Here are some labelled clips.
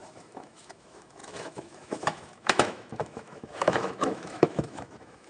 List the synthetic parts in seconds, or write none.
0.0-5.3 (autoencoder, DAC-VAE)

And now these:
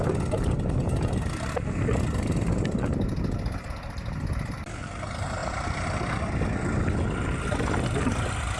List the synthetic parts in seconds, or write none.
none

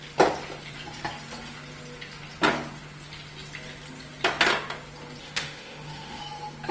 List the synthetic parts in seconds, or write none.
5.2-6.2 (autoencoder, DAC-VAE)

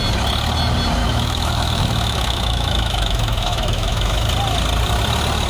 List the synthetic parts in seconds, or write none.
1.0-4.3 (autoencoder, DAC-VAE)

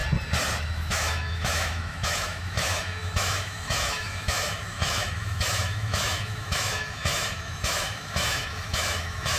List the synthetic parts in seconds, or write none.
0.6-9.4 (autoencoder, DAC-VAE)

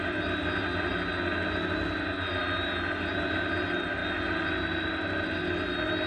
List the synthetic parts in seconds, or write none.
none

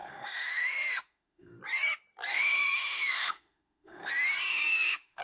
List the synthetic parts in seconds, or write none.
0.0-1.6 (autoencoder, DAC-VAE); 2.3-4.1; 4.5-5.2

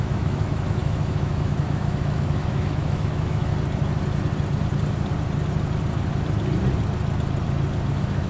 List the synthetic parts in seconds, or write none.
0.0-3.5 (autoencoder, DAC-VAE); 7.9-8.3